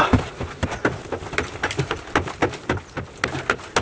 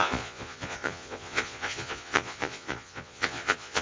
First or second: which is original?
first